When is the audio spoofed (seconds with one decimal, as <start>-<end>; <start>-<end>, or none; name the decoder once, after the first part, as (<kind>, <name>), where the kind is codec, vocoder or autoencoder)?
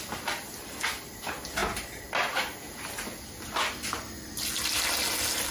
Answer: none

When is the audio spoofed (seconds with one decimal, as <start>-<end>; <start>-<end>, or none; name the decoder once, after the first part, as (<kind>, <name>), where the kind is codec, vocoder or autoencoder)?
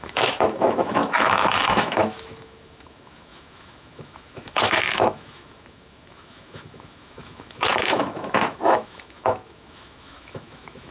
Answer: 0.0-10.9 (autoencoder, DAC-VAE)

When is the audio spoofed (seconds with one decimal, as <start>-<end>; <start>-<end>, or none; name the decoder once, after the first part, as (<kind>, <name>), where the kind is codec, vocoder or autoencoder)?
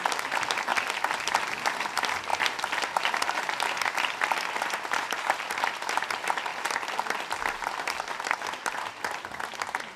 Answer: none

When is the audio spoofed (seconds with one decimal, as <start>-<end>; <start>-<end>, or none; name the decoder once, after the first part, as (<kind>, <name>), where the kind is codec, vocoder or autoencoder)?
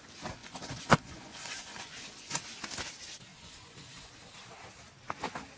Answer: 0.4-2.4 (vocoder, Vocos); 3.3-4.1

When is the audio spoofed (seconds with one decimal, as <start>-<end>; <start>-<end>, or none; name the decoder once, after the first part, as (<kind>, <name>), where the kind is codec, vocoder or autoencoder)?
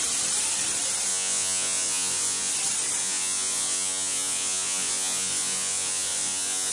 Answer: 1.1-2.5 (vocoder, Vocos); 3.0-6.7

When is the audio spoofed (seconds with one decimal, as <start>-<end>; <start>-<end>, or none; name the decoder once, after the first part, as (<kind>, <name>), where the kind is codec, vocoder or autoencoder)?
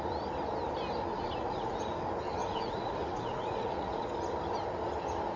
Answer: 1.1-1.8 (vocoder, Vocos); 2.4-4.1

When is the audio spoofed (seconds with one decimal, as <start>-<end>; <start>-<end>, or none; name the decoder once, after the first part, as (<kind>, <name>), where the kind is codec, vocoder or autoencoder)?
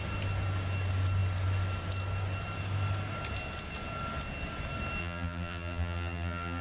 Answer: 5.0-6.6 (vocoder, BigVGAN v2)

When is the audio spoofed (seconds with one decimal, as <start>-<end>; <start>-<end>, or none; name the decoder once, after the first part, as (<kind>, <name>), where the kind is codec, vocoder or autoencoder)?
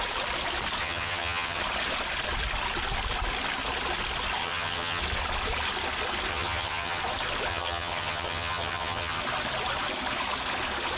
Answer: 0.8-1.6 (vocoder, HiFi-GAN); 4.4-5.0; 6.3-7.0; 7.5-9.2